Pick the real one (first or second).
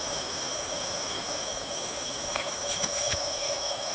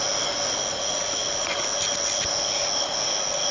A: second